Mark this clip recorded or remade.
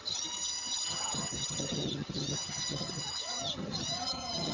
remade